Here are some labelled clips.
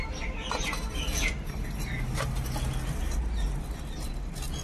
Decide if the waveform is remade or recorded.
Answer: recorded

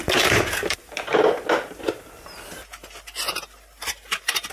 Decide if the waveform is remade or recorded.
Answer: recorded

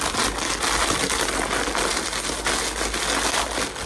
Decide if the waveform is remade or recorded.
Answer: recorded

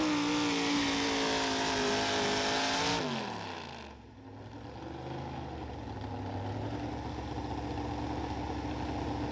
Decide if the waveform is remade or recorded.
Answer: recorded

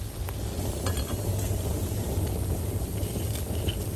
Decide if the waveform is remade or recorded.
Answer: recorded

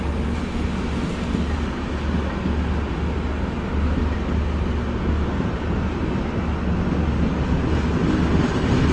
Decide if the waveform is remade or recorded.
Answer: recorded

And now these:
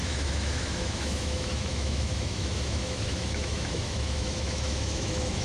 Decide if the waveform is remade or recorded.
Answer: remade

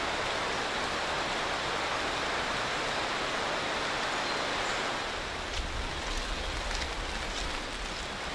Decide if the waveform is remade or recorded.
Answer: recorded